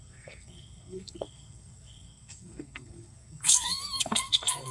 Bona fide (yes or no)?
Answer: no